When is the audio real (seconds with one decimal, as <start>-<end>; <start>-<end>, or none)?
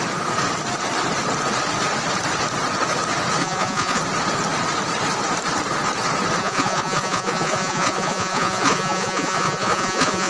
0.0-3.4; 4.0-6.4